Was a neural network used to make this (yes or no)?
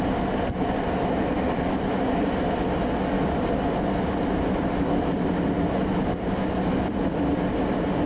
no